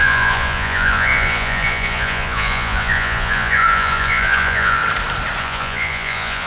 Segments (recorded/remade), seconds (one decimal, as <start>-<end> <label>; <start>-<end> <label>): 0.0-4.8 remade; 4.8-5.4 recorded; 5.4-6.5 remade